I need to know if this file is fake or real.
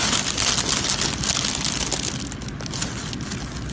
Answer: real